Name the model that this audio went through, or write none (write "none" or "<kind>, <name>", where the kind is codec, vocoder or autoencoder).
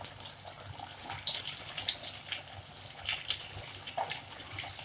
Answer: none